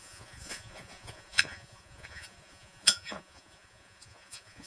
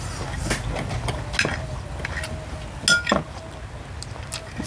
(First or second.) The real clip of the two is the second